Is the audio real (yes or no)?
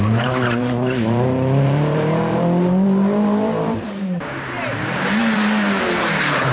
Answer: no